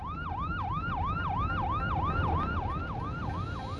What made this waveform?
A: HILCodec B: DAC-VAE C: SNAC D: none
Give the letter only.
D